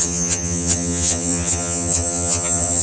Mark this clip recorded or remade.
remade